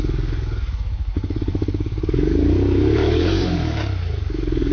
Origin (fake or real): fake